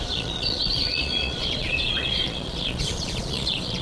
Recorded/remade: remade